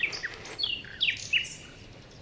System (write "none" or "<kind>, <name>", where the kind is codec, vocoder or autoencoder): none